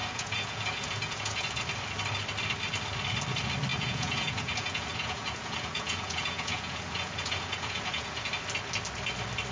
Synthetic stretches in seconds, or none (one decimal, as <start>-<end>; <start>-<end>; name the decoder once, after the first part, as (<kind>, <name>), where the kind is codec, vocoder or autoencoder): 0.0-1.6 (vocoder, Vocos); 3.7-8.3